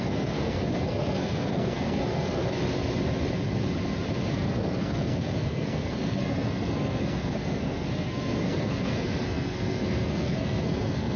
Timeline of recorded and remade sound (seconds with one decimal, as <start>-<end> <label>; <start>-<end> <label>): 0.0-2.4 remade; 2.4-4.3 recorded; 4.3-11.2 remade